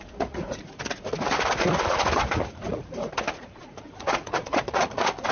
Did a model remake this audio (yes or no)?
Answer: yes